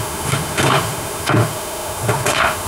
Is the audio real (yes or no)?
no